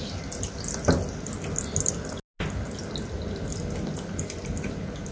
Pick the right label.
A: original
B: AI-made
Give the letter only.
A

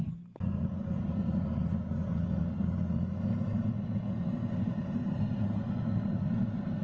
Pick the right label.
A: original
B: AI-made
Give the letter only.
A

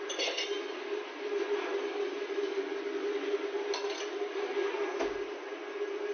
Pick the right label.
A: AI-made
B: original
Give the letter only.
B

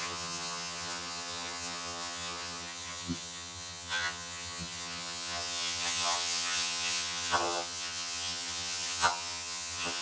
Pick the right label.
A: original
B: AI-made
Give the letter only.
B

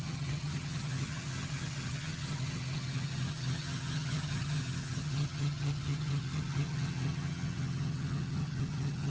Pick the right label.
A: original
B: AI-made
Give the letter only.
B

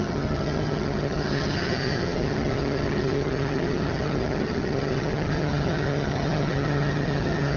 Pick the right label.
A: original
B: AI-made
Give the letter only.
B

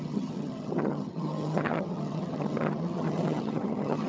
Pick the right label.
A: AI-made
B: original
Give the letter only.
A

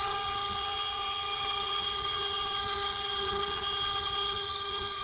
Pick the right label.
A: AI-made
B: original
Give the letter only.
A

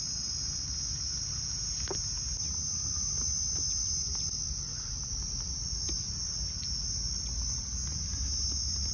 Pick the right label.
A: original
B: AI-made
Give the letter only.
A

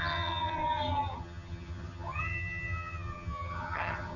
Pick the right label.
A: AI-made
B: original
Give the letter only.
A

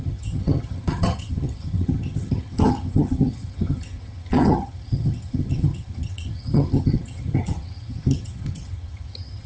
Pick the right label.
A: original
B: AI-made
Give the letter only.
B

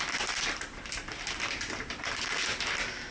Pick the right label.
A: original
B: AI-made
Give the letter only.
A